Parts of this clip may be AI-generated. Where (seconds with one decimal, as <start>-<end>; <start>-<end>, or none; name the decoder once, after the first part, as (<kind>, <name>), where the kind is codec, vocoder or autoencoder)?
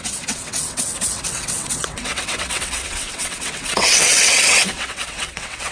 0.0-5.7 (vocoder, WaveNeXt)